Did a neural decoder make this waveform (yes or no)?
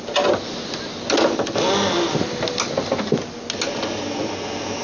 no